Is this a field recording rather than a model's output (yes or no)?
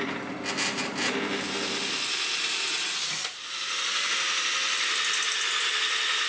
yes